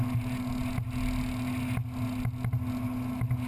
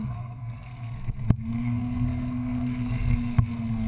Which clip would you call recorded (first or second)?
first